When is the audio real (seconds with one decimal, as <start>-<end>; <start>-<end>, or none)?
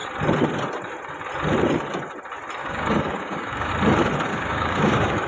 0.0-2.6; 3.7-4.3